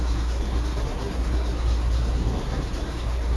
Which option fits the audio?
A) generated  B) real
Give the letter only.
A